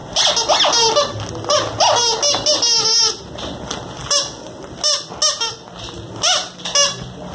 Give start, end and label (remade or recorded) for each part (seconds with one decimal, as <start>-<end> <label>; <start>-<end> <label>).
0.0-7.3 recorded